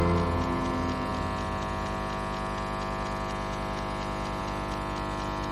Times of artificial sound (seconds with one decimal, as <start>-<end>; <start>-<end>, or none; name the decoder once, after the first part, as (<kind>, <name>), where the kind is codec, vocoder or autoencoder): none